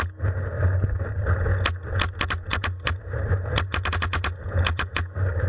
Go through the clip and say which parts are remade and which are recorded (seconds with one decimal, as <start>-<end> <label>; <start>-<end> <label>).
0.0-2.5 recorded; 2.5-5.5 remade